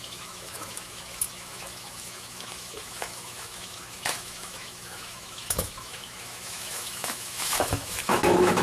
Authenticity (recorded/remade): remade